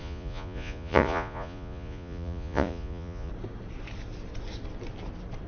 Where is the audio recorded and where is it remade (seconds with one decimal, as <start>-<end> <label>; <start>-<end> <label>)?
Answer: 0.0-3.3 remade; 3.3-5.5 recorded